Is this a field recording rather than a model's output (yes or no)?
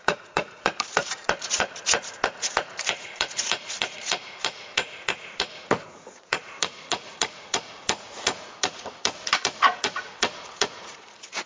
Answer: no